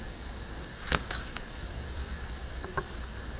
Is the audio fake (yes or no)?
yes